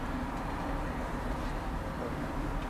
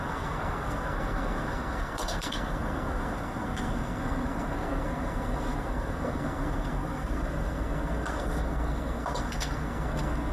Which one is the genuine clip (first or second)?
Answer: first